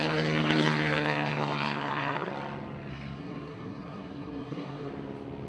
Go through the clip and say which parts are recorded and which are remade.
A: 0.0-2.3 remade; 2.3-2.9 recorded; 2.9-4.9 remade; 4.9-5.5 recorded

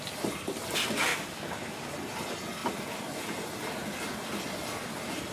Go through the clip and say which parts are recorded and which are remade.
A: 0.0-1.1 recorded; 1.1-1.9 remade; 1.9-5.3 recorded

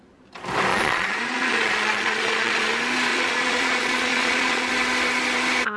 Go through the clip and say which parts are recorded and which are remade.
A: 0.0-0.7 recorded; 0.7-2.7 remade; 2.7-3.1 recorded; 3.1-4.7 remade; 4.7-5.8 recorded

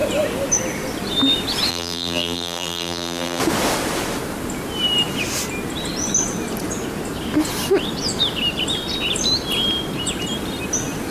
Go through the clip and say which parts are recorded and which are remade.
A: 0.0-1.7 recorded; 1.7-3.4 remade; 3.4-11.1 recorded

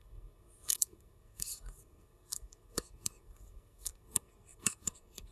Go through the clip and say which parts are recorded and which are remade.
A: 0.0-5.3 remade

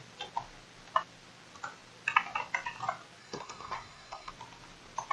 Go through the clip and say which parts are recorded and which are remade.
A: 0.0-3.2 recorded; 3.2-4.3 remade; 4.3-5.1 recorded

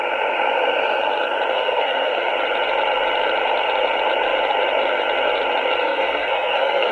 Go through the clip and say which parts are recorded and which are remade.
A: 0.0-1.5 recorded; 1.5-2.3 remade; 2.3-5.8 recorded; 5.8-6.9 remade

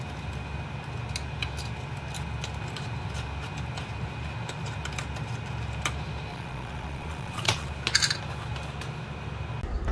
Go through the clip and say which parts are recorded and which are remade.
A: 0.0-6.3 recorded; 6.3-7.7 remade; 7.7-9.9 recorded